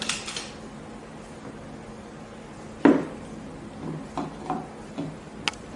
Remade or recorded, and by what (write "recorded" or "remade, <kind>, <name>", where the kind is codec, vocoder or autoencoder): recorded